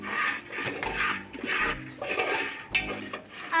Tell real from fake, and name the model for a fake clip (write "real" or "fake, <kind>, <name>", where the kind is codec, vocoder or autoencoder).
real